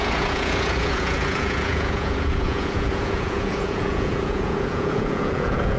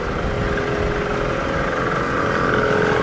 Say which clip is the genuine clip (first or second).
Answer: second